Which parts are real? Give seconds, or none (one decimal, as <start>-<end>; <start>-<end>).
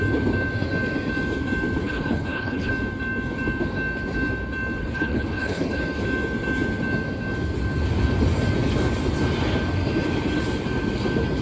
0.0-1.8; 2.7-4.8; 5.8-11.4